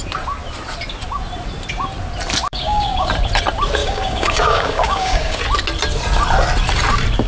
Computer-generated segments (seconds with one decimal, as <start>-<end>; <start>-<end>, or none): 2.5-3.1; 3.8-5.4